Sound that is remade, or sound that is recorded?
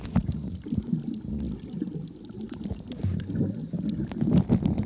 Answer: recorded